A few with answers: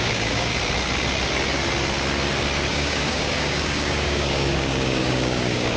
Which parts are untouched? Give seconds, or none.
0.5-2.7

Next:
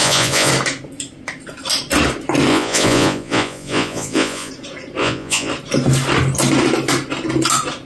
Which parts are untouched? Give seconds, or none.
0.5-2.5; 4.5-5.0; 5.5-7.9

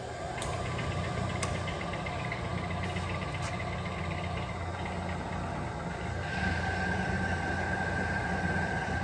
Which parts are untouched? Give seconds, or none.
0.0-9.0

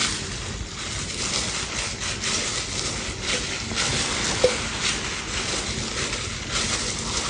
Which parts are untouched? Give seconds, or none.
0.0-7.3